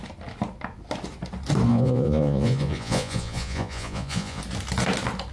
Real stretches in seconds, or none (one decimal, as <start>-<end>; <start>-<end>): 0.0-1.7; 4.4-5.3